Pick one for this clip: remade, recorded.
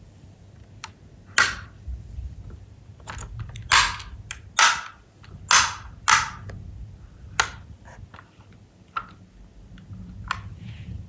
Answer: recorded